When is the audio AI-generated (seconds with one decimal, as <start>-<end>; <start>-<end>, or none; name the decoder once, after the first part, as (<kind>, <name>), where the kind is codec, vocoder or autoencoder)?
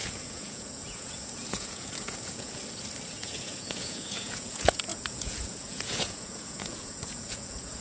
0.0-2.6 (vocoder, Vocos); 3.1-7.8